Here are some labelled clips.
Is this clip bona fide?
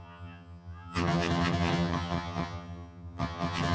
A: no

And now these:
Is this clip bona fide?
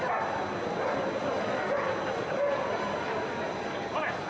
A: yes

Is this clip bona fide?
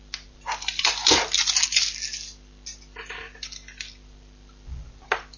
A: yes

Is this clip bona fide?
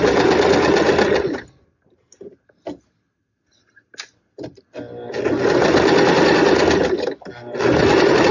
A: yes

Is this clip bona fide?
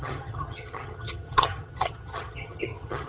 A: no